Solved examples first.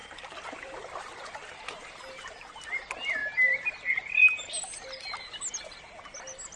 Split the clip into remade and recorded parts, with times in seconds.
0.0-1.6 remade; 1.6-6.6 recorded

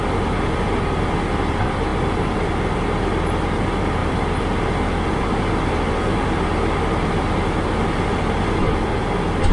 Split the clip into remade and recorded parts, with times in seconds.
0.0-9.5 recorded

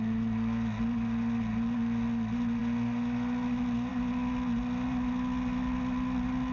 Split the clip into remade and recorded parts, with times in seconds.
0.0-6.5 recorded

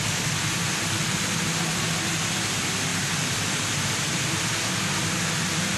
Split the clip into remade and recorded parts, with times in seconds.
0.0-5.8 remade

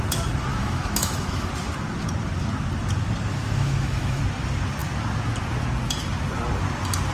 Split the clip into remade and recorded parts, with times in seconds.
0.0-0.5 recorded; 0.5-1.5 remade; 1.5-3.3 recorded; 3.3-4.2 remade; 4.2-7.1 recorded

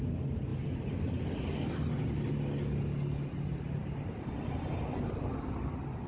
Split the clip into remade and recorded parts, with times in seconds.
0.0-0.5 recorded; 0.5-1.5 remade; 1.5-3.8 recorded; 3.8-5.3 remade; 5.3-6.1 recorded